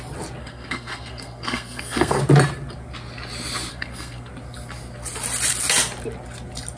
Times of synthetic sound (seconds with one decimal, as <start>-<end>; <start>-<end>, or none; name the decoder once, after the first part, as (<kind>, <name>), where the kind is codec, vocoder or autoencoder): 0.4-2.2 (codec, SNAC); 3.7-4.3